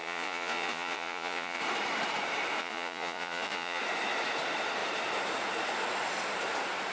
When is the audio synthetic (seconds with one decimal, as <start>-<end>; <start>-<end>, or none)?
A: 0.0-1.6; 2.6-3.8